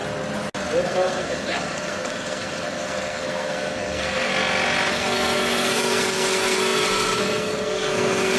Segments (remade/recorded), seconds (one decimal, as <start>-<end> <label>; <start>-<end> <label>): 0.0-0.8 recorded; 0.8-4.3 remade; 4.3-4.9 recorded; 4.9-8.4 remade